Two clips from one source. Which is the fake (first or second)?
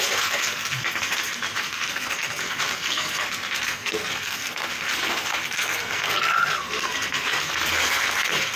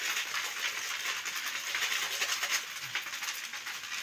first